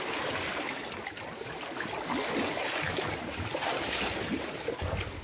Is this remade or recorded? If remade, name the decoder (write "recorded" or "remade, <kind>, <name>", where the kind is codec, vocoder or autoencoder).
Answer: recorded